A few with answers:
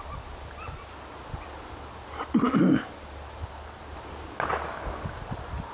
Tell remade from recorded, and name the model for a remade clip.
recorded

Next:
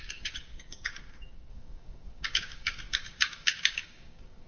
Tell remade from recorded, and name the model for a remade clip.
remade, codec, DAC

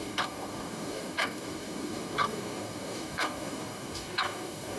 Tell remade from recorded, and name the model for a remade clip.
remade, codec, DAC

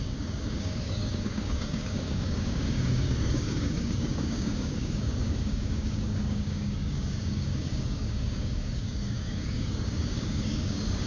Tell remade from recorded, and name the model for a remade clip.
remade, codec, DAC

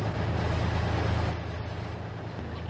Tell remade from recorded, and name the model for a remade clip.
recorded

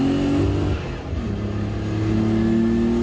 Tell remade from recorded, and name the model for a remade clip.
recorded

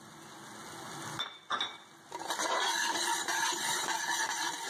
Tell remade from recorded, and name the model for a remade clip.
recorded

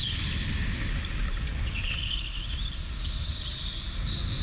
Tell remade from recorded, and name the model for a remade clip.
recorded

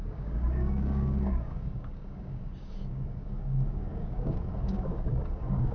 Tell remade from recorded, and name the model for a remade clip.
remade, codec, DAC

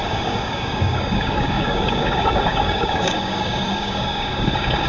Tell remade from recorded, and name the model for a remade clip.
remade, codec, DAC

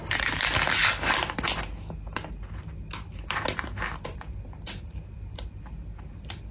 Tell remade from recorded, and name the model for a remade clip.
recorded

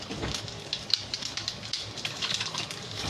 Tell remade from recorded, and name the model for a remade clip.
remade, codec, DAC